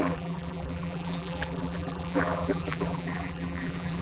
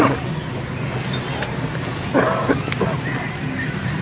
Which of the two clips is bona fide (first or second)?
second